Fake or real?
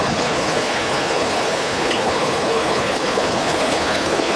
fake